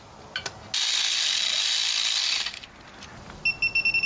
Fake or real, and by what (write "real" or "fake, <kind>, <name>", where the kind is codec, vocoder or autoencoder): real